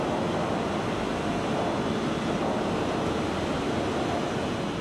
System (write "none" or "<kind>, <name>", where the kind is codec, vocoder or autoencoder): none